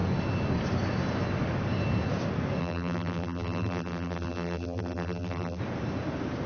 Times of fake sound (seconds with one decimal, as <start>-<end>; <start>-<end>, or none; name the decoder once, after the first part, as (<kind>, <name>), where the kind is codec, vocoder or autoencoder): 2.6-5.6 (vocoder, BigVGAN v2)